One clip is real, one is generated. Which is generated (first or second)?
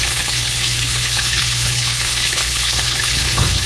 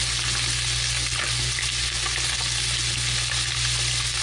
first